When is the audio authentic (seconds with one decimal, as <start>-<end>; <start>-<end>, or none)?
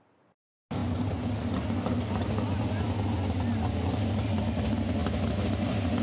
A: 0.0-6.0